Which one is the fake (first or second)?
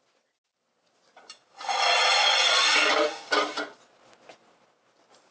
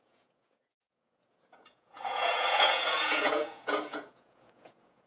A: second